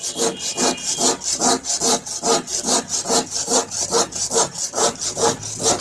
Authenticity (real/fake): real